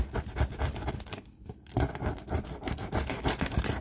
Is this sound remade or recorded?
recorded